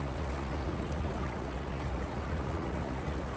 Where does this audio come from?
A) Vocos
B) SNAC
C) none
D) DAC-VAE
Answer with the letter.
A